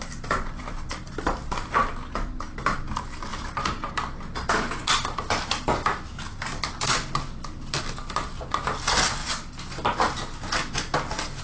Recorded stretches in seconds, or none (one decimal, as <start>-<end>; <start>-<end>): 0.0-11.4